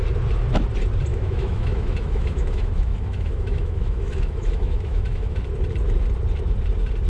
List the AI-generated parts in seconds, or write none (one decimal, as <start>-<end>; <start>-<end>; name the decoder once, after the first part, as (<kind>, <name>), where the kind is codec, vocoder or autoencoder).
1.1-5.4 (autoencoder, DAC-VAE)